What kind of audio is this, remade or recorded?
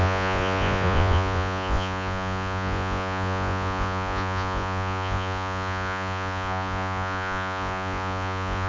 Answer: remade